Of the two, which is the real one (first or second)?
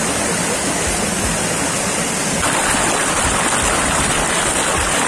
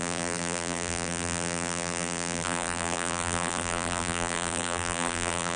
first